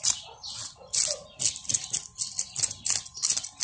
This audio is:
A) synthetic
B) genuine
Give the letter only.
B